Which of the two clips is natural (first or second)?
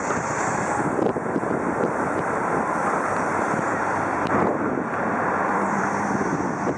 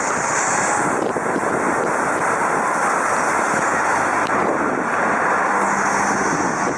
second